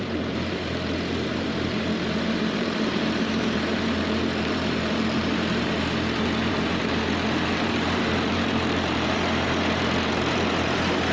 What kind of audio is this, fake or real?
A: fake